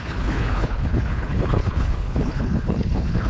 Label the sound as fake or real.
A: fake